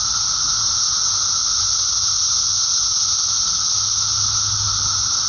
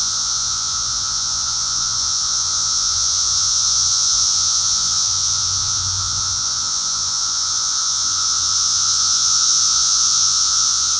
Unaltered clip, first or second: first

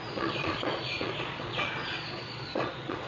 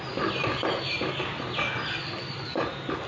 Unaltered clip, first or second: second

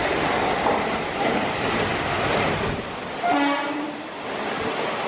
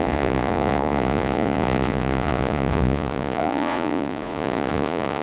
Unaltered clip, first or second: first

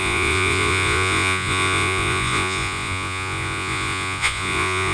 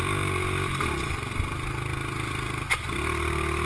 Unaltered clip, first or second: second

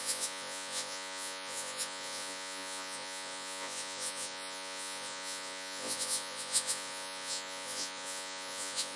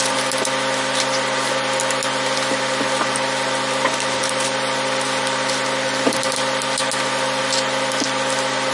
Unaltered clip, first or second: second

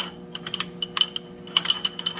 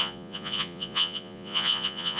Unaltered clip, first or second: first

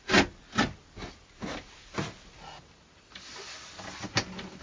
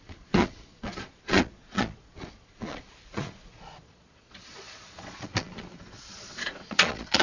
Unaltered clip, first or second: first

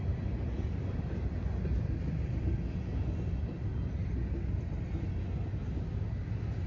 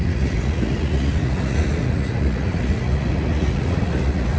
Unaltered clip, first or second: first